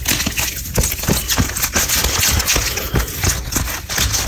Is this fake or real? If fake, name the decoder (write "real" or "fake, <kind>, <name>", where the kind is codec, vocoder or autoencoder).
real